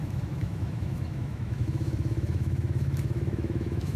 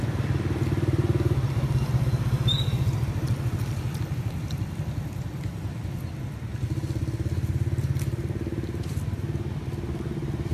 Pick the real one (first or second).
second